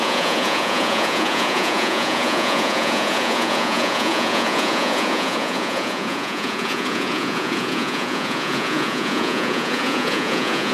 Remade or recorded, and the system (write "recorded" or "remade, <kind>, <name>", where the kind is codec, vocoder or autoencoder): remade, vocoder, Vocos